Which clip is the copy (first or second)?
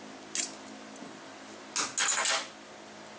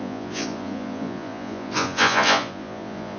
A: second